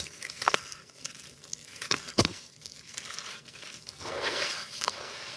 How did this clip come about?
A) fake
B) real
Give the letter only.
A